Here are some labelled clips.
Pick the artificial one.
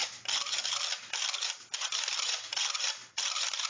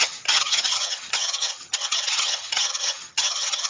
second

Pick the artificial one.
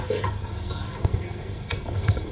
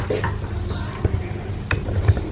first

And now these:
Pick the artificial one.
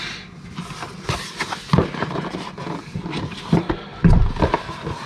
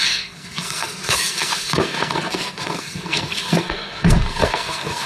second